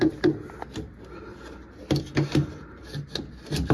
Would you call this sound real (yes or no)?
yes